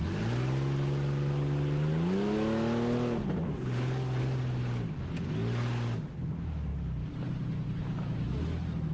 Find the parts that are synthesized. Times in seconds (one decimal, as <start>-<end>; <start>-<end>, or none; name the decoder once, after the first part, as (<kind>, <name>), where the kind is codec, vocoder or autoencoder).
none